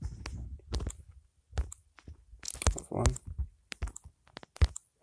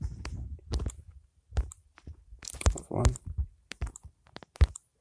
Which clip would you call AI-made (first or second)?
second